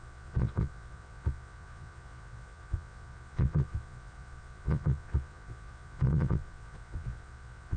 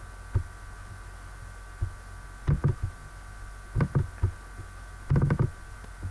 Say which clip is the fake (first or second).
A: first